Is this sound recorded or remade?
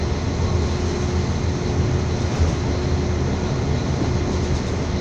recorded